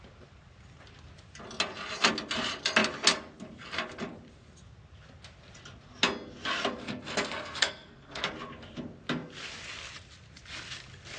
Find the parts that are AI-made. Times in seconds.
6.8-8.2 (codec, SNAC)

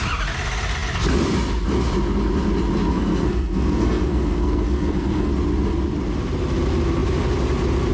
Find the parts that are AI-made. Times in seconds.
2.9-5.3 (codec, SNAC)

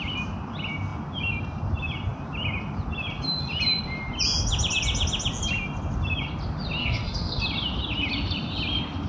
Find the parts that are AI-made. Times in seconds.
6.8-7.4 (codec, SNAC)

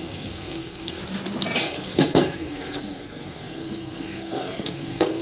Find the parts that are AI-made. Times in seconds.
0.0-1.0 (codec, SNAC); 1.6-5.2

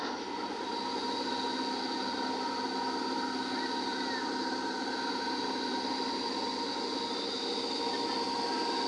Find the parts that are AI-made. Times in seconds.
none